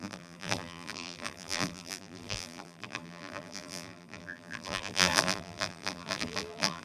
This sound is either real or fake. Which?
fake